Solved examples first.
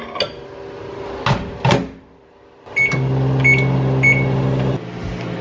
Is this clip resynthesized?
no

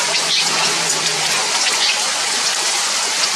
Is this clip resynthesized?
yes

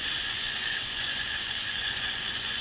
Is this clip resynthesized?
yes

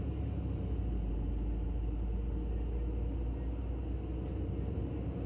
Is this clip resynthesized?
no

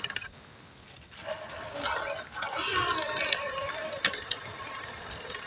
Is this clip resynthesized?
no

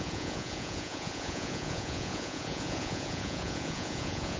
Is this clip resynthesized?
yes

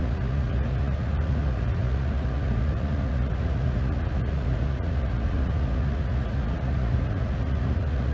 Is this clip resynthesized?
yes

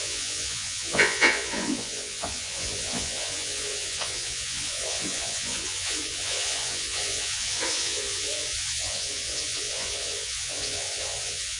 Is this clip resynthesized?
yes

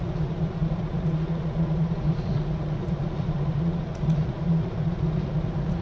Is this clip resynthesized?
yes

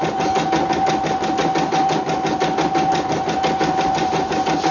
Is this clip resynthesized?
no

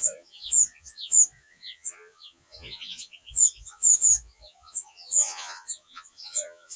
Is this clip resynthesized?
yes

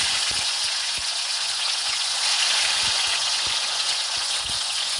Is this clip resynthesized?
yes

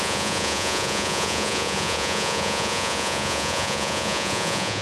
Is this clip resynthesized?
yes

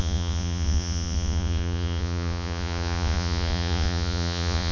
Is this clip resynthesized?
yes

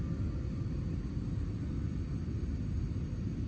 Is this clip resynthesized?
no